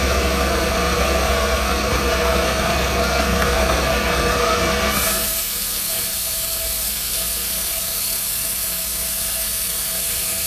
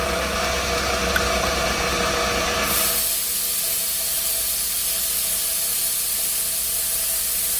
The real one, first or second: second